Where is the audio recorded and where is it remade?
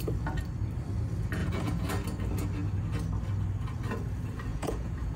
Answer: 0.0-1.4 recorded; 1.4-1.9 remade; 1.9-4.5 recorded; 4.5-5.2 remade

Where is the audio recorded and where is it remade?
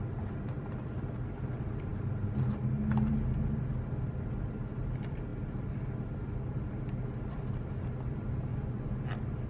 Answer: 0.0-8.5 recorded; 8.5-9.0 remade; 9.0-9.5 recorded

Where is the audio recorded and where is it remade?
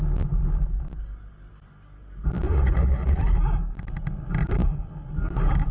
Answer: 0.0-2.5 recorded; 2.5-3.2 remade; 3.2-5.7 recorded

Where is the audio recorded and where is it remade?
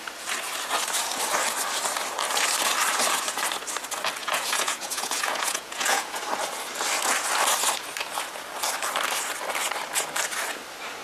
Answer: 0.0-4.2 recorded; 4.2-6.2 remade; 6.2-11.0 recorded